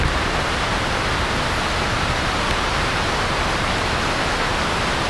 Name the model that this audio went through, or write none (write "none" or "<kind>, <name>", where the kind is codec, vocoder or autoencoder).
vocoder, BigVGAN v2